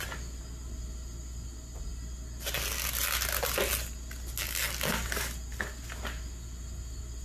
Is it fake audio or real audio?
real